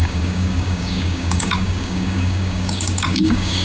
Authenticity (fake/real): fake